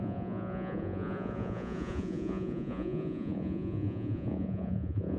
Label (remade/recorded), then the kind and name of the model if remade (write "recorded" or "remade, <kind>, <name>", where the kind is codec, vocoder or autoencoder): remade, vocoder, Vocos